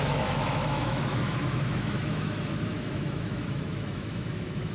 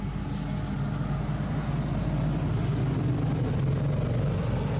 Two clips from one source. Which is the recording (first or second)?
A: second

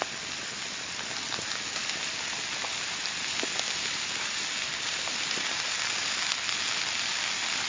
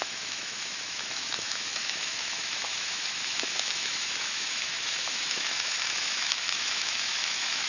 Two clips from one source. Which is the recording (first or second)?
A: first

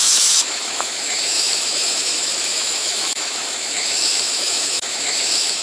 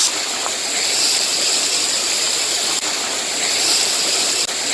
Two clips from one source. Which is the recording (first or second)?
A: second